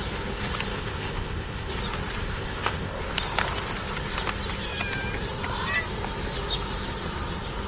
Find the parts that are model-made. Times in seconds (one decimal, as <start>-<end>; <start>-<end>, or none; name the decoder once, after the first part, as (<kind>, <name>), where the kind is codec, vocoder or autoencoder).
0.8-1.7 (codec, ZipCodec); 2.2-3.0